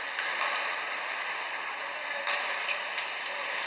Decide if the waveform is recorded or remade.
recorded